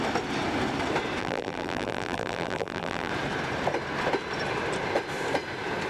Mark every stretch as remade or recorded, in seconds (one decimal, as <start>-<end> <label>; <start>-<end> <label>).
0.0-1.2 recorded; 1.2-3.1 remade; 3.1-5.9 recorded